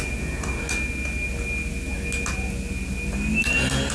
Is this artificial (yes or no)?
no